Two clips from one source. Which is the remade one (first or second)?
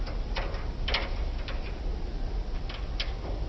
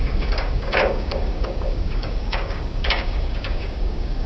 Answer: second